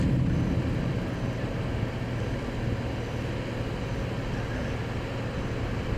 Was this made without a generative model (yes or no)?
yes